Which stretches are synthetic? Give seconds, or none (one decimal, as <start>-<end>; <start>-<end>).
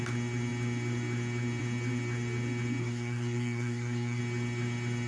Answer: 2.8-4.2